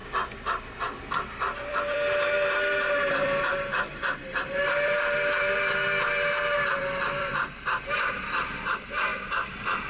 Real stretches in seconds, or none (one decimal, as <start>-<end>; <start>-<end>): 7.3-8.7